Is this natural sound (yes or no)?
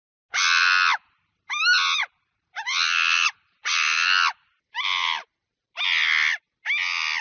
yes